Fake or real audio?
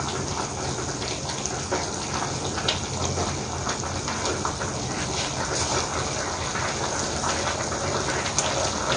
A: real